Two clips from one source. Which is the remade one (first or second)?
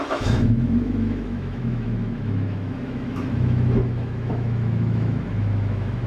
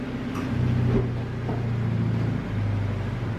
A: first